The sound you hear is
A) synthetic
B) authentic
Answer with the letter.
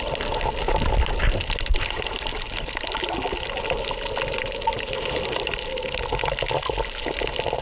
B